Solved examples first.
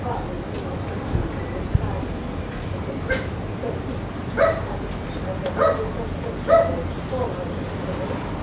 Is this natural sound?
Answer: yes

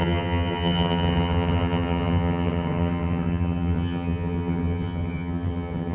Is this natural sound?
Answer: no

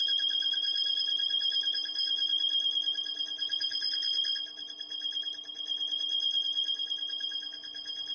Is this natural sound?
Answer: no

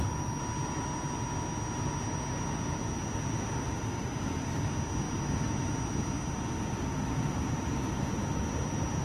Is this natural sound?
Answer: yes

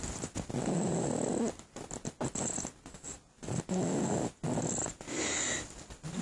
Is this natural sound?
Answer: yes